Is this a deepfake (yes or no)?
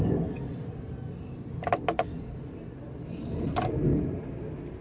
no